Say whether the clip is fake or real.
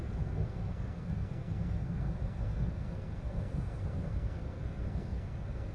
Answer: fake